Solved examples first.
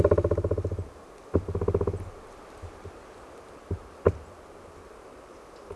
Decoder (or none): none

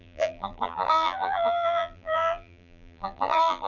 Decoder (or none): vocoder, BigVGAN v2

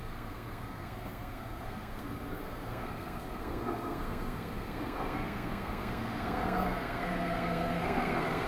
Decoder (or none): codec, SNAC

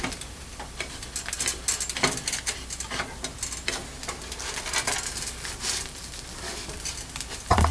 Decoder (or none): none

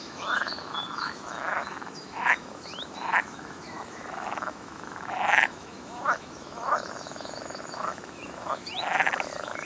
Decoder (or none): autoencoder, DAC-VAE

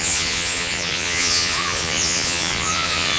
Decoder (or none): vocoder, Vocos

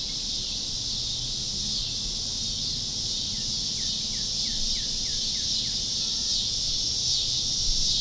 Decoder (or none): none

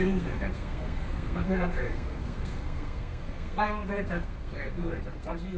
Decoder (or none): codec, SNAC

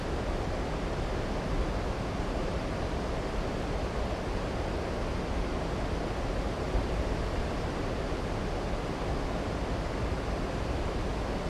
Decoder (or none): none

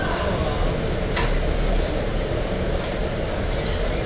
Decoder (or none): none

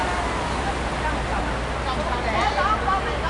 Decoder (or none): none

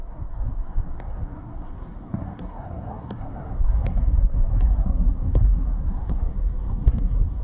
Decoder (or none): codec, SNAC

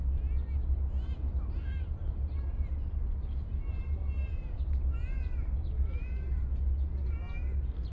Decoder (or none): none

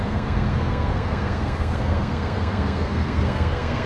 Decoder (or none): codec, SNAC